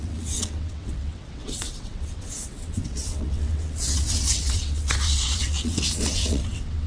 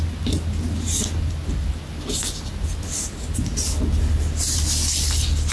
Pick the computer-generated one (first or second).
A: first